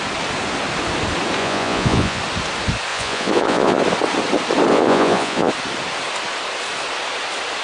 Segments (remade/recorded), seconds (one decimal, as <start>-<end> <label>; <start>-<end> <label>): 0.0-1.4 recorded; 1.4-2.2 remade; 2.2-2.9 recorded; 2.9-3.8 remade; 3.8-4.7 recorded; 4.7-5.5 remade; 5.5-7.6 recorded